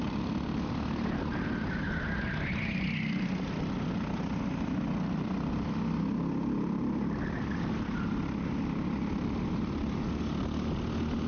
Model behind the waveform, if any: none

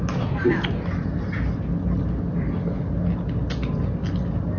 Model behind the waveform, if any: none